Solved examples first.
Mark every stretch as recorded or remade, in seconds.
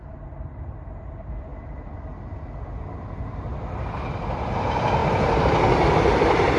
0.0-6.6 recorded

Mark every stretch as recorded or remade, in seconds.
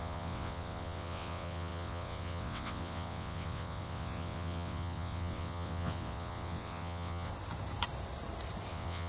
0.0-7.3 remade; 7.3-8.7 recorded; 8.7-9.1 remade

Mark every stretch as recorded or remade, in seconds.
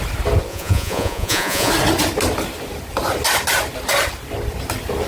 0.0-0.5 recorded; 0.5-1.7 remade; 1.7-5.1 recorded